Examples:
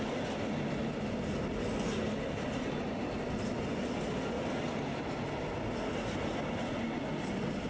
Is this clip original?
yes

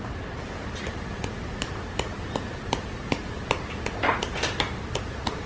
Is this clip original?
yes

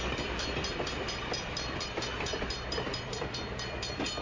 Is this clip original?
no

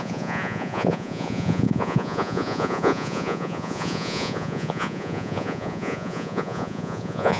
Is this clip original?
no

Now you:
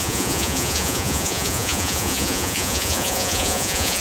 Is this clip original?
no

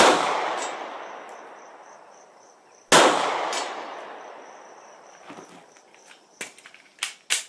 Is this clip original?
yes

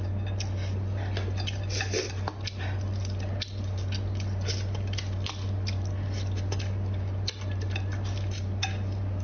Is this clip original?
yes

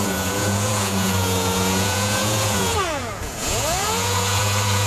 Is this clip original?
no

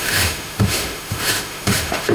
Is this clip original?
no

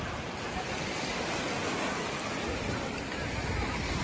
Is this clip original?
yes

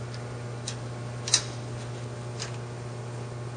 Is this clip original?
yes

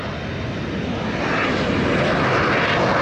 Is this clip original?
yes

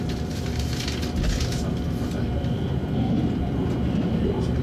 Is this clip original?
yes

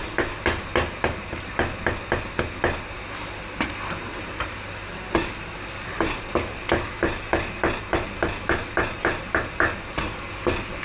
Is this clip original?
yes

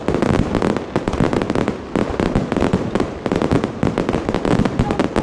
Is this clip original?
yes